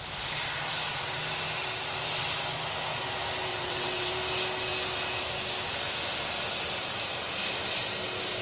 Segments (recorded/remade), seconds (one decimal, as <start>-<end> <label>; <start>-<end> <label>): 0.0-3.5 recorded; 3.5-4.1 remade; 4.1-8.4 recorded

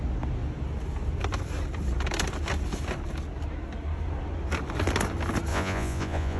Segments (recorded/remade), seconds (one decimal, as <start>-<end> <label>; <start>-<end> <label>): 0.0-5.5 recorded; 5.5-6.4 remade

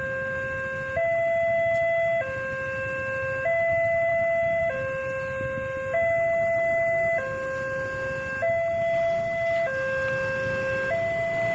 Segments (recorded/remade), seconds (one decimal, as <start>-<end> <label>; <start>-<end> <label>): 0.0-11.5 recorded

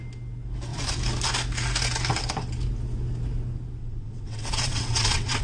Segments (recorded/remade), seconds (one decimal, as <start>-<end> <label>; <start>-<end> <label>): 0.0-3.8 recorded; 3.8-5.4 remade

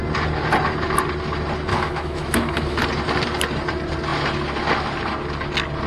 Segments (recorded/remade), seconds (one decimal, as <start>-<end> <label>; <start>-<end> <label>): 0.0-1.7 recorded; 1.7-2.8 remade; 2.8-5.9 recorded

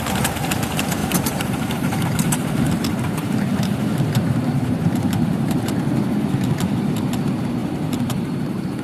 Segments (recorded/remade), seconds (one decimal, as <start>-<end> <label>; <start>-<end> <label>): 0.0-1.0 recorded; 1.0-5.7 remade; 5.7-7.6 recorded; 7.6-8.8 remade

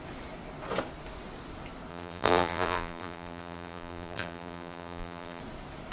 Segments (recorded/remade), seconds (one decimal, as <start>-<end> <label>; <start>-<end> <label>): 0.0-1.9 recorded; 1.9-5.4 remade; 5.4-5.9 recorded

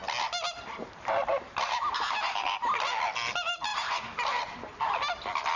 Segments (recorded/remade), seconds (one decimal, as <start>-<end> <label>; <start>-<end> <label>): 0.0-0.8 recorded; 0.8-2.5 remade; 2.5-3.7 recorded; 3.7-4.9 remade; 4.9-5.6 recorded